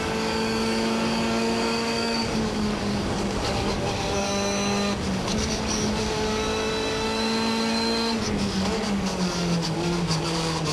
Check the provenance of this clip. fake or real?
fake